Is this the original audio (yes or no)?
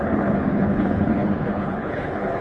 no